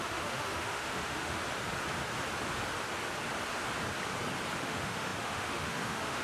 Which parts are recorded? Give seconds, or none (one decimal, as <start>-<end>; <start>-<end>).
1.4-4.6